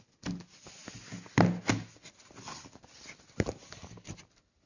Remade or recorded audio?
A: recorded